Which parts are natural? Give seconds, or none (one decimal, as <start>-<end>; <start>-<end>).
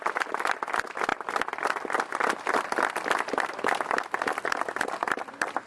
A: 0.0-5.7